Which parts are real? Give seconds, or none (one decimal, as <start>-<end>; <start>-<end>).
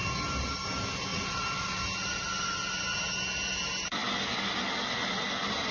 0.0-1.1; 1.8-5.7